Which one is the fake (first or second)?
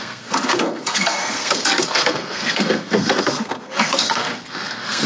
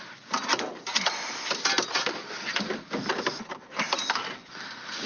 first